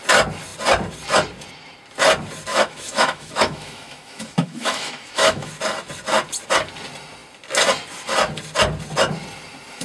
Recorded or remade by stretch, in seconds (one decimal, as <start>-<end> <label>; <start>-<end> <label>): 0.0-2.5 recorded; 2.5-5.5 remade; 5.5-9.8 recorded